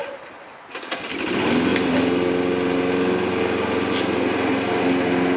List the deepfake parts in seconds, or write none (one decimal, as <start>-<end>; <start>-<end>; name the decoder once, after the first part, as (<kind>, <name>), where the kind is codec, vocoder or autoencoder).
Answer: none